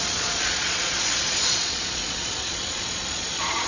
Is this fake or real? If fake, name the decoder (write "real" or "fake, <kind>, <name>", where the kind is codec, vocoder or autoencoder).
fake, vocoder, Vocos